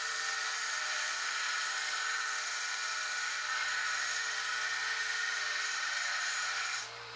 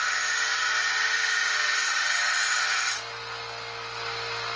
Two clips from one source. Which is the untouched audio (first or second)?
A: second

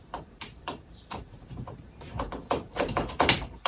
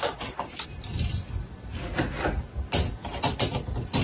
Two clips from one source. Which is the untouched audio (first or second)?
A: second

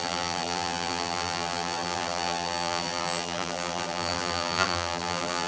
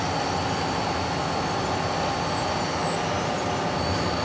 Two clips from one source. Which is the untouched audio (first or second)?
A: second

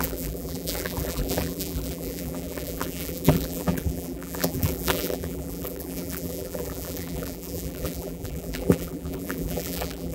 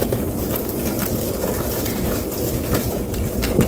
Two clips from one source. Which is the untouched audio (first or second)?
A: second